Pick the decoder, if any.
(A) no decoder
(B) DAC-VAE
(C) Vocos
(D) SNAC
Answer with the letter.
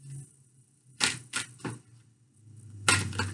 A